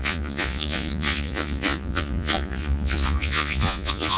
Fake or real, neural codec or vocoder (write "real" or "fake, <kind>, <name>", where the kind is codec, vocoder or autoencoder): fake, vocoder, Vocos